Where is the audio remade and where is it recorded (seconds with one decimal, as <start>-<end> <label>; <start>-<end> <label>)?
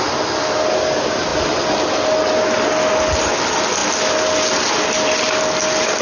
0.0-6.0 recorded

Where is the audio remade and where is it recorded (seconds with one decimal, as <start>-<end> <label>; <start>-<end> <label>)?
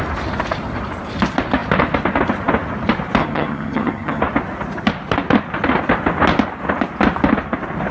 0.0-3.2 recorded; 3.2-4.2 remade; 4.2-7.9 recorded